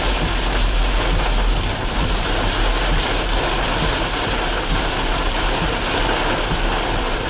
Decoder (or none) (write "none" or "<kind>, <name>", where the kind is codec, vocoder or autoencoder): none